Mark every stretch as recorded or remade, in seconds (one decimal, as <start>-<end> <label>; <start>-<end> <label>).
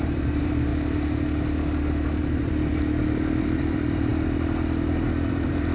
0.0-0.7 remade; 0.7-2.2 recorded; 2.2-2.7 remade; 2.7-3.4 recorded; 3.4-4.1 remade; 4.1-5.3 recorded; 5.3-5.7 remade